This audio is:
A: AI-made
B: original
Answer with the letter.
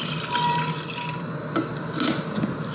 B